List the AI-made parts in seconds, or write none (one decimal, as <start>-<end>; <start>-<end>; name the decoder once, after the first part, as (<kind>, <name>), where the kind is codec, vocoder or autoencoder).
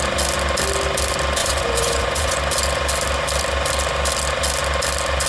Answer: 1.4-2.4 (vocoder, Vocos)